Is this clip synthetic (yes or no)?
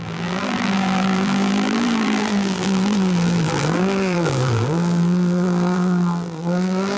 yes